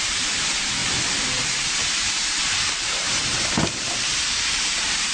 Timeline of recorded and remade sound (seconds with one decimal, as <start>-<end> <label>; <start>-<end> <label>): 0.0-5.1 remade